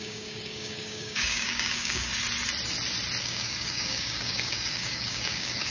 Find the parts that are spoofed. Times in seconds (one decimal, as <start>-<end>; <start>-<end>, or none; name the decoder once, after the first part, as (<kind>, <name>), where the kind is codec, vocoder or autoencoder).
0.0-2.1 (codec, DAC); 3.2-5.7